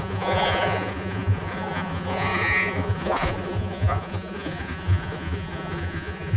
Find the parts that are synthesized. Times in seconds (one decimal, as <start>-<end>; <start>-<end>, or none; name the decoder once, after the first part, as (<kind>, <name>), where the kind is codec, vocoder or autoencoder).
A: 0.0-6.4 (vocoder, Vocos)